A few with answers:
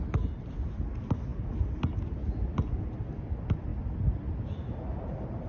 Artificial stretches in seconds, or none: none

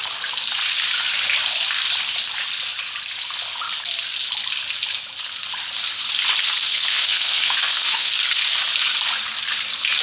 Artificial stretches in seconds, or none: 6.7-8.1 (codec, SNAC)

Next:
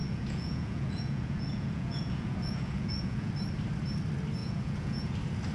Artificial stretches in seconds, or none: 0.0-3.3 (vocoder, Vocos); 4.4-5.1